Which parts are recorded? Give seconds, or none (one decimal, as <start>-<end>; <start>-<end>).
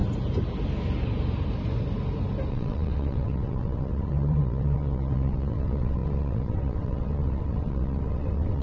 0.0-2.5